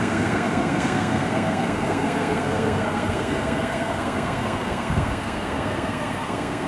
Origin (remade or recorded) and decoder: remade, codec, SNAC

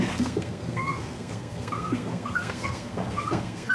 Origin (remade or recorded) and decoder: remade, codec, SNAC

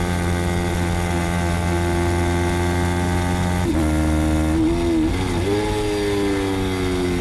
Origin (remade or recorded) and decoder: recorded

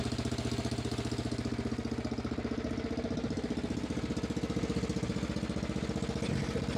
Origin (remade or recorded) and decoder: recorded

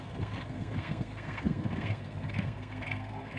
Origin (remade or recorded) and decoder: remade, codec, SNAC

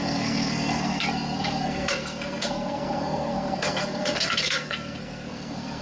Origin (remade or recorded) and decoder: remade, codec, SNAC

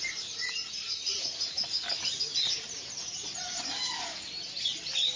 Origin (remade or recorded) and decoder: recorded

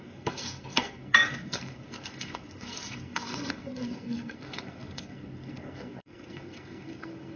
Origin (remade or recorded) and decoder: remade, codec, SNAC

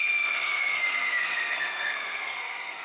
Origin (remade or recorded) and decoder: remade, codec, SNAC